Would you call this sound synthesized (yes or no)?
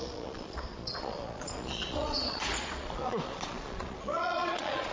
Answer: yes